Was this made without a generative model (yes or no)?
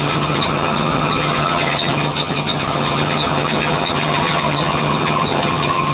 no